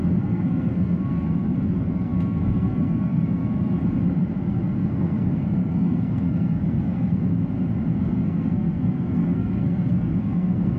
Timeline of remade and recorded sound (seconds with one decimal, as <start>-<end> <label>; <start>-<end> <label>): 0.0-3.8 remade; 3.8-4.4 recorded; 4.4-7.3 remade; 7.3-7.9 recorded; 7.9-10.8 remade